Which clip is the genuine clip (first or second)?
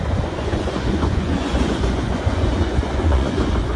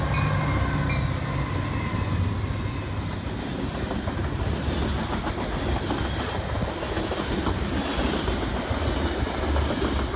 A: second